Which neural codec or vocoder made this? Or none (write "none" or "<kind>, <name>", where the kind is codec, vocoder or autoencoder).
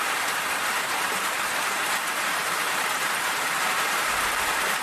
vocoder, BigVGAN v2